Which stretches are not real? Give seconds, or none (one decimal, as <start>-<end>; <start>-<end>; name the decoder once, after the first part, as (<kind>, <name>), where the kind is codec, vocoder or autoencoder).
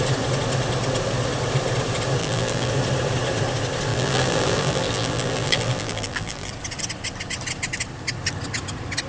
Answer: 2.2-2.7 (vocoder, BigVGAN v2); 3.9-6.5